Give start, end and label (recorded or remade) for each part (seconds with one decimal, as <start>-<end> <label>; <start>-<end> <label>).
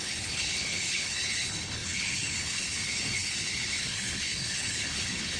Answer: 0.0-5.4 remade